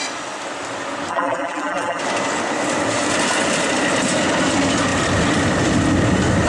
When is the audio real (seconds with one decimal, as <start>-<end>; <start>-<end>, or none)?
0.0-1.1; 2.0-6.5